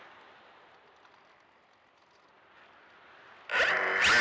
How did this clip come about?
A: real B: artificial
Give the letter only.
A